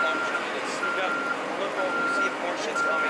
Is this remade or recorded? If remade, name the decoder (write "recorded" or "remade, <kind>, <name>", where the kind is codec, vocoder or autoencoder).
recorded